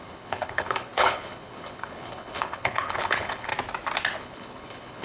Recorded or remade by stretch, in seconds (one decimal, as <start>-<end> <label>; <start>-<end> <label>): 0.0-3.5 remade; 3.5-4.2 recorded; 4.2-5.0 remade